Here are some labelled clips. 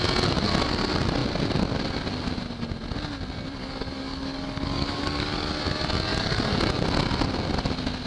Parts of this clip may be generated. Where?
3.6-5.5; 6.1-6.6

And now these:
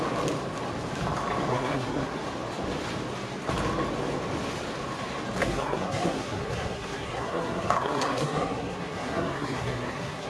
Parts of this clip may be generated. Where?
1.5-2.2; 5.4-10.3